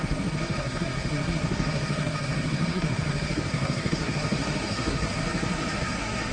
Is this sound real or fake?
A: fake